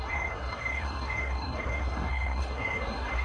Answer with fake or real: fake